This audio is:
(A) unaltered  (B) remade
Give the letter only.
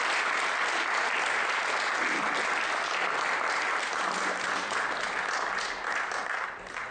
A